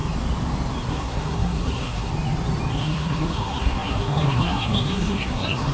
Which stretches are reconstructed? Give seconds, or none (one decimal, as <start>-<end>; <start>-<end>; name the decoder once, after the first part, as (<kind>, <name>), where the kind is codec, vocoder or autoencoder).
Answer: 0.9-2.1 (codec, SNAC); 2.7-5.7